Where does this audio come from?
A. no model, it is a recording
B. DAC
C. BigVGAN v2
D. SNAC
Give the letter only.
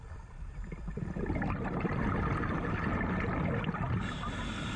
A